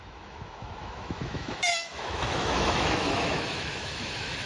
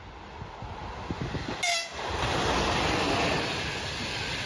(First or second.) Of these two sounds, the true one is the second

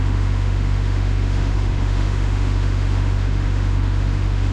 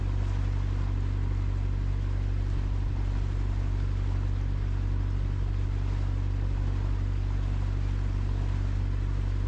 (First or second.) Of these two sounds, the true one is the second